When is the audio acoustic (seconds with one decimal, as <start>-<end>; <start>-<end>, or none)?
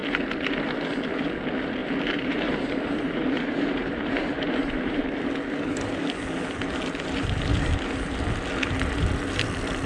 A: 0.0-1.8; 5.0-9.9